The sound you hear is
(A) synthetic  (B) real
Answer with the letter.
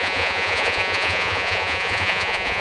A